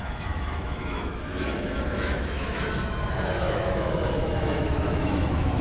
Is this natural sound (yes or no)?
no